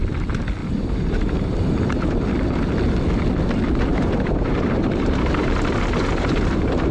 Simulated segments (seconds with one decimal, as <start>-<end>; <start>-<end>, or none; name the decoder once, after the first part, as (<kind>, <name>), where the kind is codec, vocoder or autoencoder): 0.6-2.1 (vocoder, BigVGAN v2); 3.9-6.5